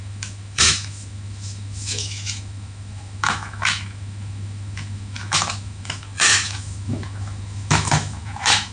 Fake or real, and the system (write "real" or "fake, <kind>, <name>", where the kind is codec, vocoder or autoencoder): fake, autoencoder, DAC-VAE